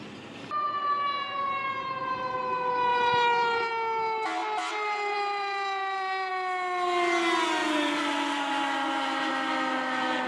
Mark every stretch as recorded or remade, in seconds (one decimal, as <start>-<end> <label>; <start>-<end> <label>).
0.0-2.9 recorded; 2.9-3.7 remade; 3.7-4.4 recorded; 4.4-6.3 remade; 6.3-7.6 recorded; 7.6-9.3 remade; 9.3-10.3 recorded